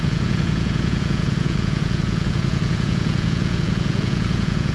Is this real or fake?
fake